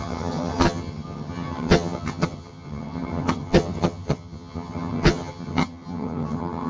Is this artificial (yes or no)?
yes